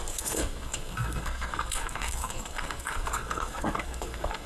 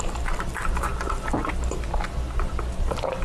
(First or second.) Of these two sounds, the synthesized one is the first